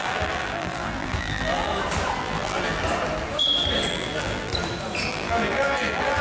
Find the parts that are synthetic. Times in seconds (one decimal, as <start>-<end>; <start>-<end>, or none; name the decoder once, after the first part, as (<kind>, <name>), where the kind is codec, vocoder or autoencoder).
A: 0.0-1.7 (vocoder, BigVGAN v2); 2.2-2.8; 3.9-4.5; 5.1-6.2